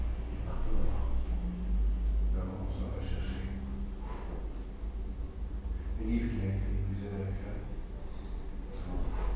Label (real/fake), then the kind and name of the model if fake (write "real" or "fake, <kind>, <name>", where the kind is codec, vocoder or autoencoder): real